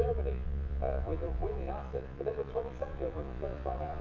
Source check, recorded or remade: remade